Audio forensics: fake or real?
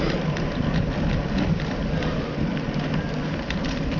real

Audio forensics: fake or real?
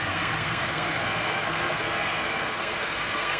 fake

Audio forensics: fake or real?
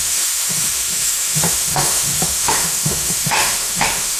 fake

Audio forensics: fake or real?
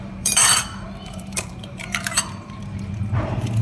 fake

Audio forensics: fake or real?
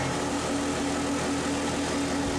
real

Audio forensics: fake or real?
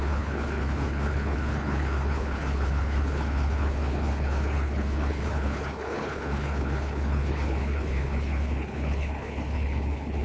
fake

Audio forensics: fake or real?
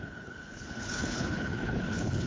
fake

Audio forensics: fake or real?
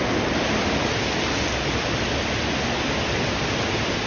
real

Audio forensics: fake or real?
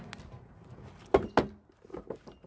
real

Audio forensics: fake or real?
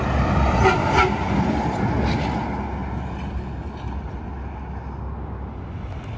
real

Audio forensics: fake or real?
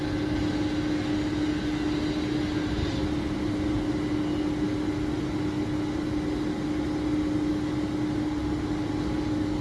real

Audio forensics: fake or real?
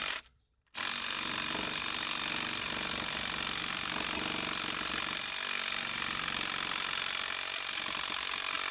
fake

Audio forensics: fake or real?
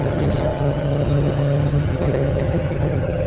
fake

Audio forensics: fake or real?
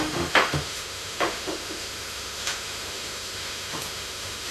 fake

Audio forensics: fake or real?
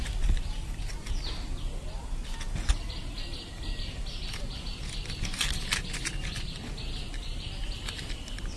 real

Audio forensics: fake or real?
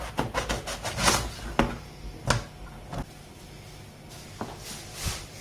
real